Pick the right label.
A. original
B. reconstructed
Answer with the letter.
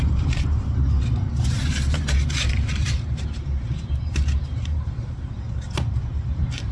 B